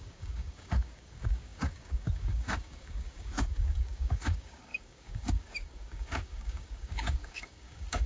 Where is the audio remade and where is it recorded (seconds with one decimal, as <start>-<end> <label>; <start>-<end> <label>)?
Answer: 0.0-8.1 remade